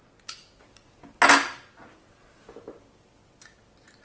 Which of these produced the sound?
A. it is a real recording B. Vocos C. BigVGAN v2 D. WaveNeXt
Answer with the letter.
A